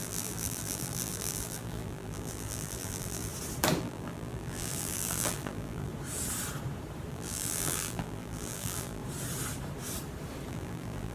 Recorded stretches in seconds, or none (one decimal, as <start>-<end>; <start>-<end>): 3.3-3.8; 5.9-7.1; 9.0-10.5